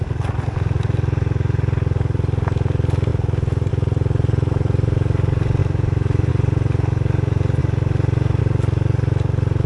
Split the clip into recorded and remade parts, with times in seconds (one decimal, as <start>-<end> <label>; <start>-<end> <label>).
0.0-5.6 recorded; 5.6-6.3 remade; 6.3-9.7 recorded